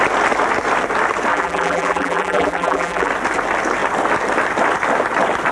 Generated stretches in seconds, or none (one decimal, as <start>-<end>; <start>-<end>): 1.3-3.1